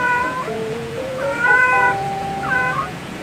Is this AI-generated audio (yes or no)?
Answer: yes